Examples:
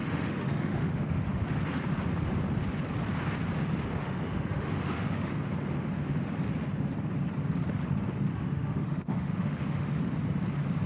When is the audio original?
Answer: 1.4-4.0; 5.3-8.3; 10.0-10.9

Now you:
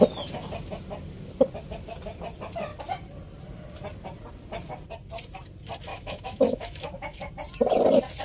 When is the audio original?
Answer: 0.0-5.9; 7.3-8.2

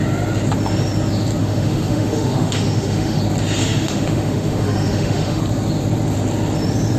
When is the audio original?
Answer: 0.0-1.4; 3.2-3.6; 5.4-7.0

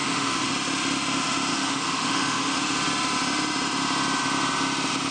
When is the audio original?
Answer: 0.5-1.5; 2.6-5.1